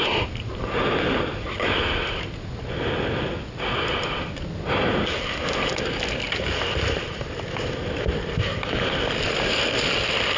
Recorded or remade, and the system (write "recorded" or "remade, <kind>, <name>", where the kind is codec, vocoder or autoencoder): recorded